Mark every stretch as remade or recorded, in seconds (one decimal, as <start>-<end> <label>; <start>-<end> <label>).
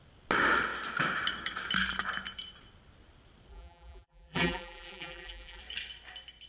0.0-3.5 recorded; 3.5-5.6 remade; 5.6-6.5 recorded